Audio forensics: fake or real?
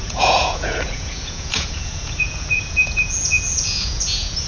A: fake